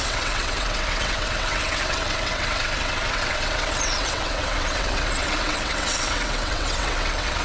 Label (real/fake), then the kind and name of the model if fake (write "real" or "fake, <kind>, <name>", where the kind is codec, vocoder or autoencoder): fake, vocoder, WaveNeXt